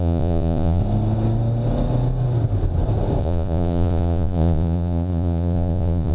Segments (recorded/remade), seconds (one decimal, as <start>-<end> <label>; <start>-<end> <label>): 0.0-0.8 remade; 0.8-3.2 recorded; 3.2-6.1 remade